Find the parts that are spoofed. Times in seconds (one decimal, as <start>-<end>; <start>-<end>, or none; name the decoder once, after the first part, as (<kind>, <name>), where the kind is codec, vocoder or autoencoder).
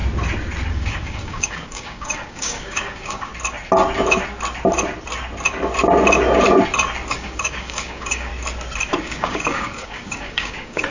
0.7-3.3 (codec, DAC); 7.1-8.3; 9.0-10.9